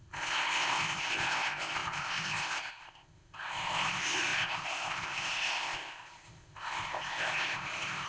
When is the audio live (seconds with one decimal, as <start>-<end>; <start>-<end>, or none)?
none